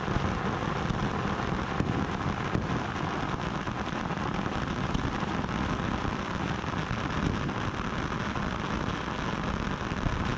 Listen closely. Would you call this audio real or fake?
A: real